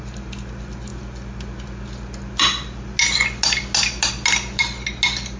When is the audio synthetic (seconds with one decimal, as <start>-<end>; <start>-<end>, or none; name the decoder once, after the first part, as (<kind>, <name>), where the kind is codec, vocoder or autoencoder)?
none